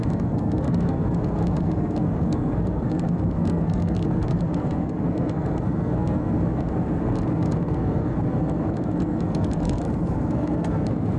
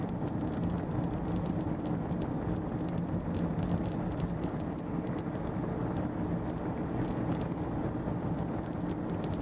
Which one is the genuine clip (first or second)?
second